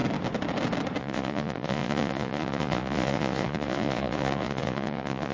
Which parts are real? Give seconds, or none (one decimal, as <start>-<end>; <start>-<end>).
0.0-1.0